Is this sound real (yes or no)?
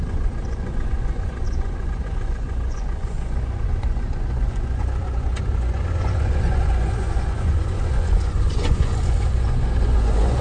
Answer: no